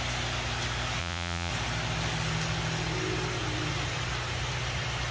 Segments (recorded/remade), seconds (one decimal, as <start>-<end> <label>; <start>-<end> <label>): 0.0-1.0 recorded; 1.0-1.5 remade; 1.5-5.1 recorded